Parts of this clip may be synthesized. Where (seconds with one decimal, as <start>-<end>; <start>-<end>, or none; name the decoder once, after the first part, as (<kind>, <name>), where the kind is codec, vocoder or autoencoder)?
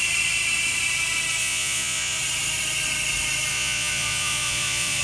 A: 1.4-2.2 (vocoder, Vocos); 3.5-5.0